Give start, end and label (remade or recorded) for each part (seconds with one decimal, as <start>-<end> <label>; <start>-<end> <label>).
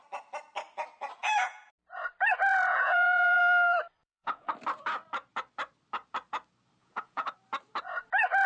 0.0-1.2 recorded; 1.2-1.7 remade; 1.7-2.5 recorded; 2.5-3.4 remade; 3.4-4.0 recorded; 4.0-4.5 remade; 4.5-6.8 recorded; 6.8-7.3 remade; 7.3-8.5 recorded